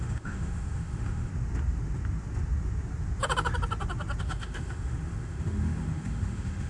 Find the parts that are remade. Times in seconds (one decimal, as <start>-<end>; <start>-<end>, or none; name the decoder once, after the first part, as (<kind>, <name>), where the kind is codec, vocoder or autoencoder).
0.0-1.3 (autoencoder, DAC-VAE); 4.2-6.7